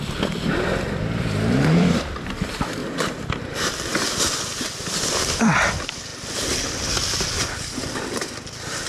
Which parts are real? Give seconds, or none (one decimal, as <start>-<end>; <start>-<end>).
6.1-6.7